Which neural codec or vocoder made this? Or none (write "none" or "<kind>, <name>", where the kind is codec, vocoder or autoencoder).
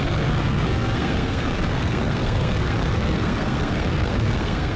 codec, SNAC